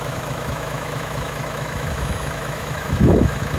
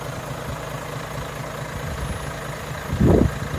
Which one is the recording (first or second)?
second